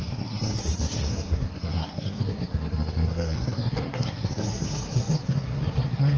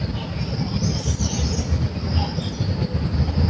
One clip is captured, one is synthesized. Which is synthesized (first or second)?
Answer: first